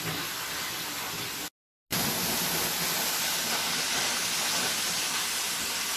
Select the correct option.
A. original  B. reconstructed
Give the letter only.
A